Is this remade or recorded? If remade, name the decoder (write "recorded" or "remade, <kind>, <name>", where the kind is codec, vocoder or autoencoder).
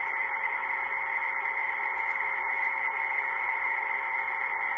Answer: recorded